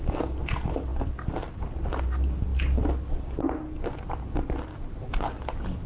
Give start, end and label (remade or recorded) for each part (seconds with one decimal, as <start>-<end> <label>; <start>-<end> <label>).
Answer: 0.0-5.9 recorded